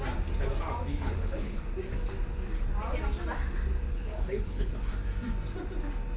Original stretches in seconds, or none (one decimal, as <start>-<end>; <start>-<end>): 0.0-0.9; 1.6-3.9; 4.7-6.2